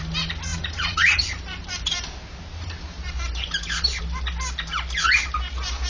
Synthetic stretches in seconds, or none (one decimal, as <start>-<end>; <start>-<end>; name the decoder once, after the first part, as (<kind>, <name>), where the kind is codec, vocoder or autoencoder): 0.5-4.0 (vocoder, BigVGAN v2)